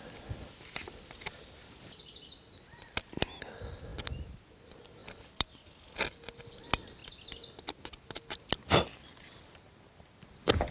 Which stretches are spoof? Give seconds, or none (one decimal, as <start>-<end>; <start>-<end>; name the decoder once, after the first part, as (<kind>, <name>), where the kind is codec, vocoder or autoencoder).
none